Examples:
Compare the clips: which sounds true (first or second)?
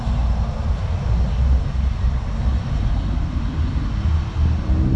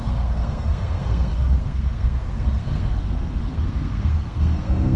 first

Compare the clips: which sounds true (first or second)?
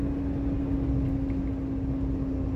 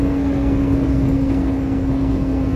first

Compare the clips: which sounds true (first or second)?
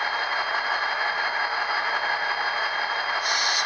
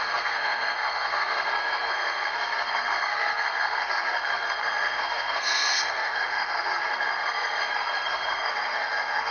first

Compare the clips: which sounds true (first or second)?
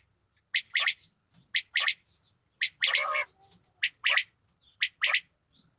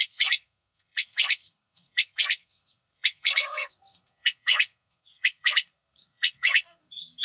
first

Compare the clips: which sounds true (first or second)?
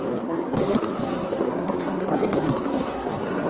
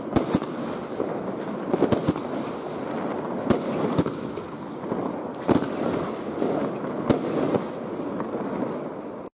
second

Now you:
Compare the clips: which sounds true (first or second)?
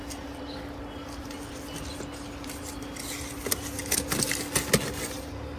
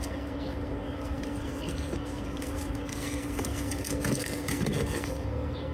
first